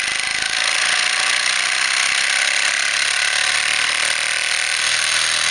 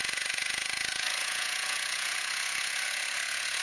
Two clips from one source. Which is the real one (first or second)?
first